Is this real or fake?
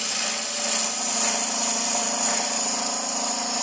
real